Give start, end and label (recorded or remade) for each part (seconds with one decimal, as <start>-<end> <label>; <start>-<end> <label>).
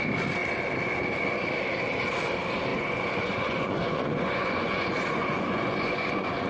0.0-2.7 recorded; 2.7-6.5 remade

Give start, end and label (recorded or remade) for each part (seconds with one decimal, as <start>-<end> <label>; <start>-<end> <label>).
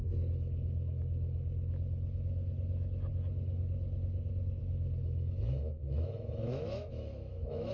0.0-5.0 recorded; 5.0-7.7 remade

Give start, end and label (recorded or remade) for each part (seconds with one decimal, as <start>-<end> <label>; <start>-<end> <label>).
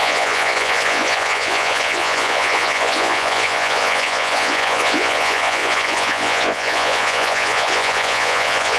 0.0-8.8 remade